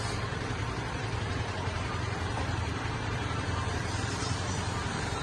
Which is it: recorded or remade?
remade